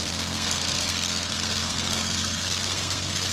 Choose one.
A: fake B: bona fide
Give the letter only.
A